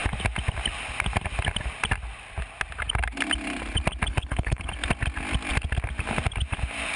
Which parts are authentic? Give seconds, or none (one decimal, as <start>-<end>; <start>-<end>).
0.0-4.1; 4.7-7.0